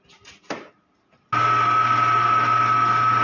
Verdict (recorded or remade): recorded